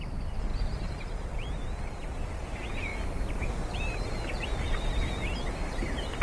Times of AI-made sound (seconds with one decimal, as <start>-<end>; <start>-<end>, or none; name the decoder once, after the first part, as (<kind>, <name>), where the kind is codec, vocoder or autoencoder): none